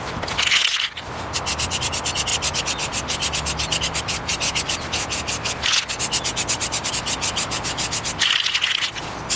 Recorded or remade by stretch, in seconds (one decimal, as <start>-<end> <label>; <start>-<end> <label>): 0.0-9.4 recorded